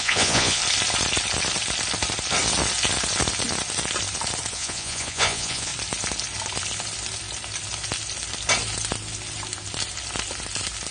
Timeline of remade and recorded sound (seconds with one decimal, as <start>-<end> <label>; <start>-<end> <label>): 0.0-0.6 remade; 0.6-4.5 recorded; 4.5-5.7 remade; 5.7-10.9 recorded